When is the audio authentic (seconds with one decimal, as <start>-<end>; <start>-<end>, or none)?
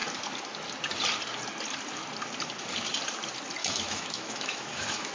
0.0-3.6